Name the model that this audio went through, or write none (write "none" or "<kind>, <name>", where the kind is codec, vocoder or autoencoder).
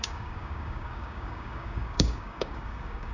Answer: codec, DAC